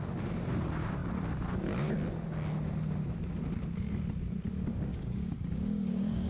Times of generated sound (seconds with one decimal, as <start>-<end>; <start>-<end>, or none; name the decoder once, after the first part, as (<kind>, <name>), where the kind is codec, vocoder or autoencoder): 4.9-6.3 (codec, DAC)

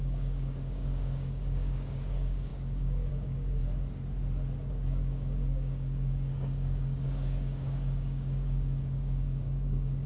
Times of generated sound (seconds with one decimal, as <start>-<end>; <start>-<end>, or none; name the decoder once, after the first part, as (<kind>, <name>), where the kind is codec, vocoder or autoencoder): 0.0-3.6 (codec, DAC); 4.7-10.1

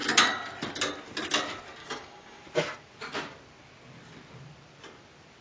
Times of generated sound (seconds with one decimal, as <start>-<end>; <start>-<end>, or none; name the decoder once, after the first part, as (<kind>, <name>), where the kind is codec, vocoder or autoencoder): 1.8-2.4 (codec, DAC)

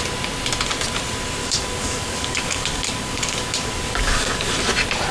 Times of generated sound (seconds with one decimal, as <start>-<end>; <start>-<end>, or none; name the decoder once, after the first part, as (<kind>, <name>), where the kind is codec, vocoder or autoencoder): 1.4-4.5 (codec, DAC)

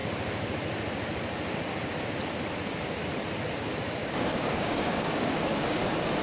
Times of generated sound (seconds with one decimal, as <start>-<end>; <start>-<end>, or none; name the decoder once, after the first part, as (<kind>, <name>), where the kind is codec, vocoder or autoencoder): 4.0-5.8 (codec, DAC)

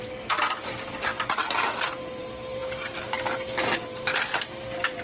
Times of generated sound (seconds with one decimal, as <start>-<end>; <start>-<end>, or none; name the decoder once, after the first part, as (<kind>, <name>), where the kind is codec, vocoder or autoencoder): none

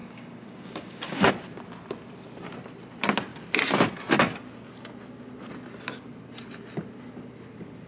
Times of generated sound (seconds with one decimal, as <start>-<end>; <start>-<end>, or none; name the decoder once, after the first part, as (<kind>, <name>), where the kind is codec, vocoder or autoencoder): 0.0-1.3 (codec, DAC)